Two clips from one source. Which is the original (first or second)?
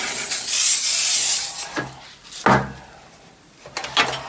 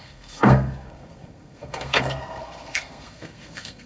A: first